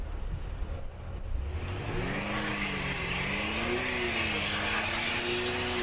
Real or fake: real